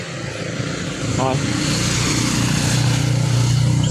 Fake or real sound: real